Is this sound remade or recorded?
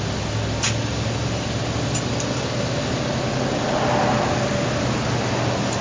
recorded